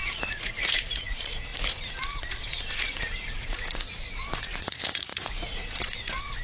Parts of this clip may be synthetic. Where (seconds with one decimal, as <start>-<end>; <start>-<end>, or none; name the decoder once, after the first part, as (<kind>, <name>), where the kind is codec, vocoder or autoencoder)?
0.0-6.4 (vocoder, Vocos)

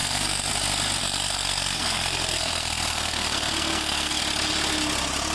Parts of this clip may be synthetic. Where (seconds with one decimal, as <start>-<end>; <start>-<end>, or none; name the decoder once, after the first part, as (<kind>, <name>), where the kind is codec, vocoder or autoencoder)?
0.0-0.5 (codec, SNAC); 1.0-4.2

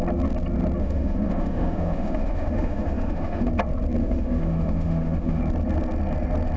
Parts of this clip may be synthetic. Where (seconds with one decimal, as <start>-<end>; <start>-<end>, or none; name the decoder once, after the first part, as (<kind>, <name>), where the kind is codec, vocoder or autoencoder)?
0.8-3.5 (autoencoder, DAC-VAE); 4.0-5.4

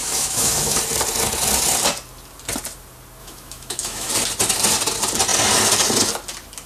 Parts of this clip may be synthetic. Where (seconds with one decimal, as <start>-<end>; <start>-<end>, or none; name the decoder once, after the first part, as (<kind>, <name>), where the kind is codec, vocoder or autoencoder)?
0.0-0.8 (autoencoder, DAC-VAE); 3.2-4.1